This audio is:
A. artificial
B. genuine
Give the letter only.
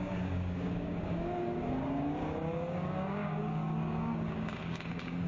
A